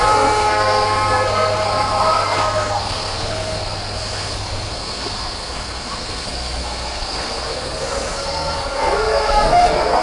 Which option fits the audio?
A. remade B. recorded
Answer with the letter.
A